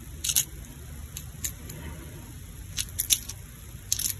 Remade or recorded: recorded